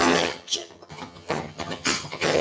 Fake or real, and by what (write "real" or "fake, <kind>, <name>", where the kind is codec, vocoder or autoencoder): fake, vocoder, HiFi-GAN